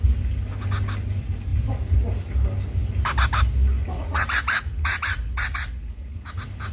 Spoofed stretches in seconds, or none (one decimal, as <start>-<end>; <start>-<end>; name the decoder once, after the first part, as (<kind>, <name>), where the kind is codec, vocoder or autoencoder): 3.8-6.3 (vocoder, Vocos)